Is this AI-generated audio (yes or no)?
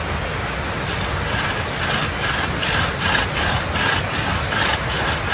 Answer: no